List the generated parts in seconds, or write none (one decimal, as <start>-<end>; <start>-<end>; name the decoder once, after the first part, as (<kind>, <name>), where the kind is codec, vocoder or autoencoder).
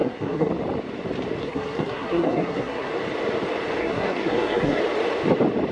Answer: 0.0-0.5 (codec, SNAC); 1.4-2.9; 3.8-4.8